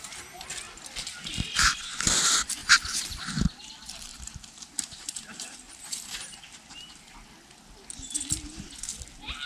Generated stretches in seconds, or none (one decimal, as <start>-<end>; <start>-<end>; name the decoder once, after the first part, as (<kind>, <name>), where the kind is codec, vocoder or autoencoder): 2.6-3.2 (vocoder, BigVGAN v2); 4.1-7.0